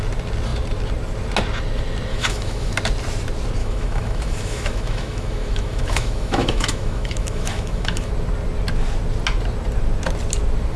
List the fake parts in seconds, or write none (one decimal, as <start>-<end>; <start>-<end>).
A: 2.1-2.7; 3.6-8.1